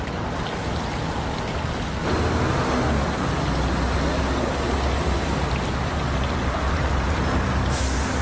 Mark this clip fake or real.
real